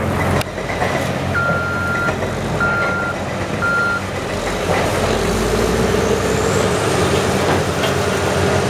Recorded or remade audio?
recorded